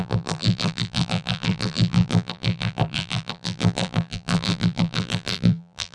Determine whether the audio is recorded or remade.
remade